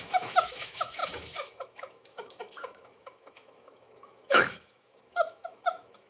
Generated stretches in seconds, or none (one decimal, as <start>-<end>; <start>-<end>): 0.0-6.1